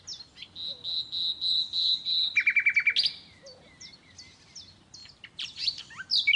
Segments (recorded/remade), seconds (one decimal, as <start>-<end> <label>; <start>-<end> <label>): 0.0-5.0 recorded; 5.0-5.8 remade; 5.8-6.4 recorded